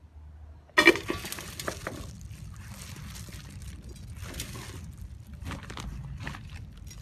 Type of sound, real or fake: real